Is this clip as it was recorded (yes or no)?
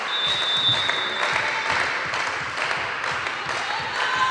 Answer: yes